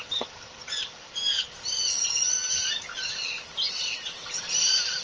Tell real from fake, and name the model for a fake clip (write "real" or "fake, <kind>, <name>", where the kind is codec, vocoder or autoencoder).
real